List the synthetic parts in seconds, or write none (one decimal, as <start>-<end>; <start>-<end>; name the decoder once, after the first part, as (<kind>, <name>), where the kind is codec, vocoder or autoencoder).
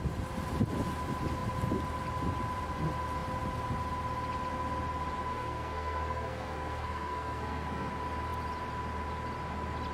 5.3-7.9 (codec, SNAC)